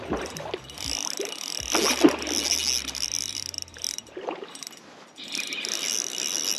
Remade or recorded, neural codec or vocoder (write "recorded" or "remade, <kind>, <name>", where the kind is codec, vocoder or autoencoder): recorded